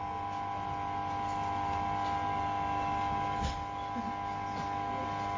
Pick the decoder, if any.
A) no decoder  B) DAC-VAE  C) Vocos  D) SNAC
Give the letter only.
A